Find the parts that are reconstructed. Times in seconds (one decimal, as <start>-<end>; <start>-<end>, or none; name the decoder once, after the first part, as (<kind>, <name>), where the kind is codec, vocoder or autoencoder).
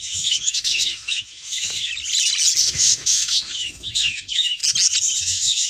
0.0-1.9 (autoencoder, DAC-VAE); 2.6-4.6; 5.2-5.7